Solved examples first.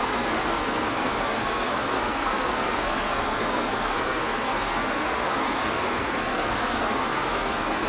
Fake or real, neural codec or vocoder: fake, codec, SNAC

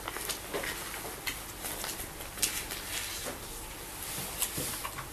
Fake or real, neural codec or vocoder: real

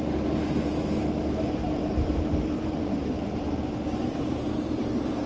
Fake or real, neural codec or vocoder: fake, vocoder, BigVGAN v2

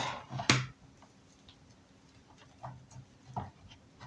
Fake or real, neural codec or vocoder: real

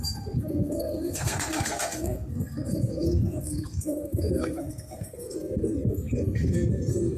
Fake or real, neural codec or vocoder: fake, codec, SNAC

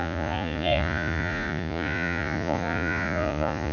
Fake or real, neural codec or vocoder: fake, vocoder, Vocos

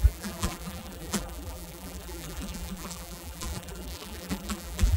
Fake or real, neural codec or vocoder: fake, vocoder, BigVGAN v2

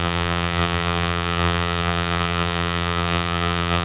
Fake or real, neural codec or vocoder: fake, vocoder, BigVGAN v2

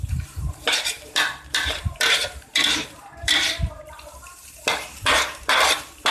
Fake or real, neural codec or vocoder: fake, vocoder, BigVGAN v2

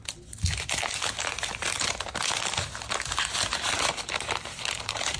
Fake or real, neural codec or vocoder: real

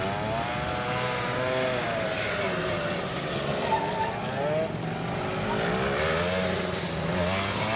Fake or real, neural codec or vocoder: real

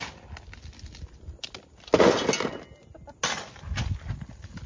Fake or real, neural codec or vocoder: real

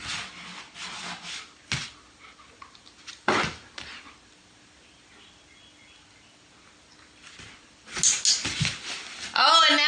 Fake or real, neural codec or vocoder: real